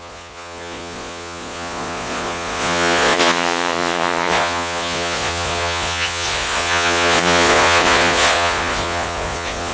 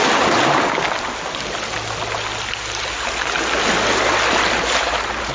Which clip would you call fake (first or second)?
first